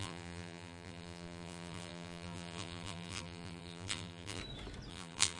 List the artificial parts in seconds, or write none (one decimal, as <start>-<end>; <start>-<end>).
0.0-4.4; 4.9-5.4